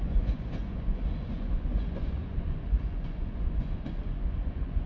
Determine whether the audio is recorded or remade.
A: remade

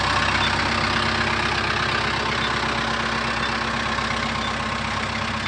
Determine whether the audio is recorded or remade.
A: recorded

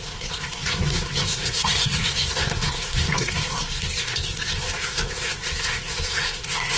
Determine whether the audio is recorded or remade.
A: remade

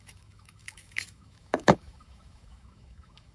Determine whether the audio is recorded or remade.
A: remade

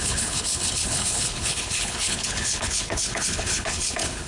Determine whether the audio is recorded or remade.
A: remade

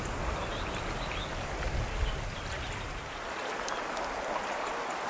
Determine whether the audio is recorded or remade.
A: recorded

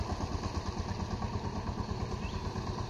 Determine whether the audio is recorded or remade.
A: recorded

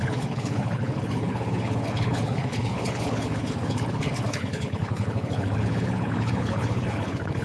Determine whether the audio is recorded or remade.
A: remade